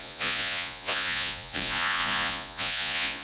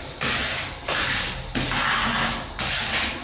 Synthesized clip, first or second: first